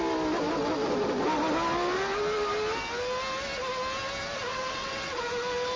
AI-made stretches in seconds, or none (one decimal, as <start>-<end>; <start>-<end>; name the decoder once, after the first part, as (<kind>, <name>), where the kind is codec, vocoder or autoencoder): 4.5-5.2 (vocoder, WaveNeXt)